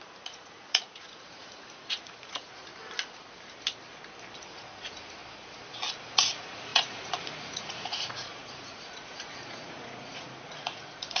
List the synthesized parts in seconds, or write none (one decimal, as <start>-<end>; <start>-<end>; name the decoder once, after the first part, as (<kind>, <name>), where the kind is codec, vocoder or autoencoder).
0.0-2.7 (vocoder, Vocos); 4.4-5.2; 6.0-11.2

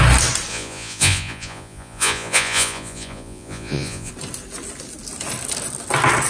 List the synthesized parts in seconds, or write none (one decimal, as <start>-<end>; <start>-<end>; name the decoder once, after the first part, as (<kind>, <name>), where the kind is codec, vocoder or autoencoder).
0.5-4.1 (vocoder, Vocos)

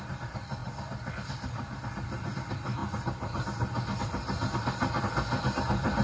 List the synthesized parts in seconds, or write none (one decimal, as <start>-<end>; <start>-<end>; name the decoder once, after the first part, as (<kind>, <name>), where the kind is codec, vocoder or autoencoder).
none